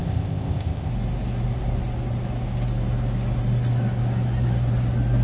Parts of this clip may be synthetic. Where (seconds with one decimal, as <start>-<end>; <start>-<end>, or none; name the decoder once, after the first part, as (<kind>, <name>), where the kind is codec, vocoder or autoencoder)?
0.0-0.9 (codec, ZipCodec)